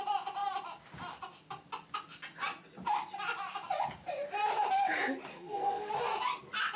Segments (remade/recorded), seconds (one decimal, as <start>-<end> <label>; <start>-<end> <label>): 0.0-5.3 recorded; 5.3-5.9 remade; 5.9-6.8 recorded